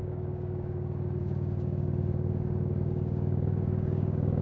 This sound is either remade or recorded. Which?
remade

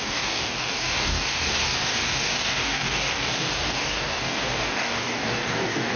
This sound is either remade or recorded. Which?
remade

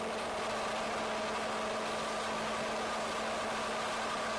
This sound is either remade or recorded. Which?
recorded